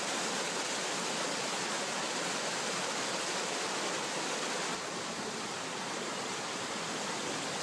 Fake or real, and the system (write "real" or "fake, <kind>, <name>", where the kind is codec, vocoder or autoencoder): real